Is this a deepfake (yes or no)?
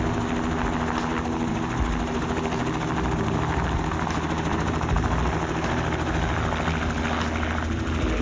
no